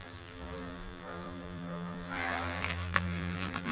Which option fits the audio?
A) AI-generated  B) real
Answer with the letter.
A